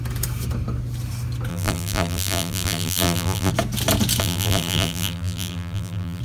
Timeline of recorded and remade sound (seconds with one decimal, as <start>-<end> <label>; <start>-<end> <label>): 0.0-1.5 recorded; 1.5-3.5 remade; 3.5-4.2 recorded; 4.2-6.2 remade